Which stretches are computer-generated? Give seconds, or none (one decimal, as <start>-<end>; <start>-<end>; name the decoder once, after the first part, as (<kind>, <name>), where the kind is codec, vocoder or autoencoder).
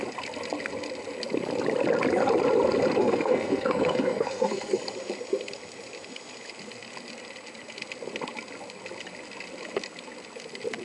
3.0-4.8 (codec, SNAC)